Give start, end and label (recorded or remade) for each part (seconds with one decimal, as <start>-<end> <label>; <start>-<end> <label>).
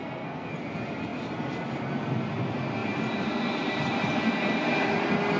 0.0-0.5 remade; 0.5-5.4 recorded